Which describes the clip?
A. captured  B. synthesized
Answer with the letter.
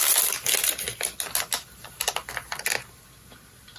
A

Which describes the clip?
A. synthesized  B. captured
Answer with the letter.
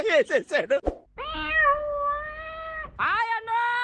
B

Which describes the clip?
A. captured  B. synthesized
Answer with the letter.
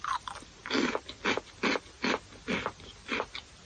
A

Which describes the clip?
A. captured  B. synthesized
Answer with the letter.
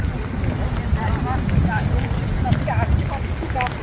A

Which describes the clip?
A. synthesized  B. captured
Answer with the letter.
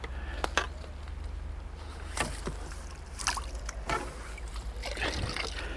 B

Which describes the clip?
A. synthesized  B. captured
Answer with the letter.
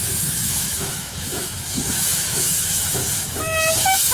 A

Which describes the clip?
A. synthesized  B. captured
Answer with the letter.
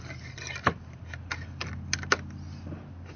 B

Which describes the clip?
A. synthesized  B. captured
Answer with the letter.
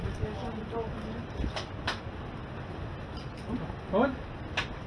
B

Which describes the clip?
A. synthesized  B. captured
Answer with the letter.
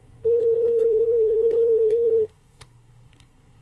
A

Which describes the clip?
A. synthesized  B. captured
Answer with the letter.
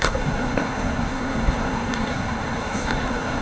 A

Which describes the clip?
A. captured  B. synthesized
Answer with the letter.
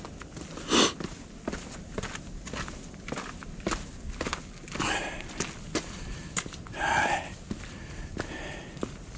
A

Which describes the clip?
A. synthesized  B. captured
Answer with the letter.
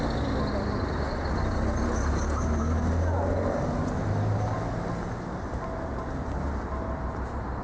B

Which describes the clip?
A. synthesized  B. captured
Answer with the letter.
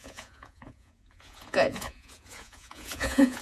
A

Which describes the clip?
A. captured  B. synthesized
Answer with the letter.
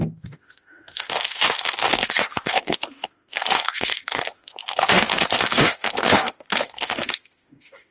B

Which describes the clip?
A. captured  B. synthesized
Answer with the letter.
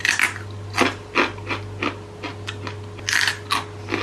A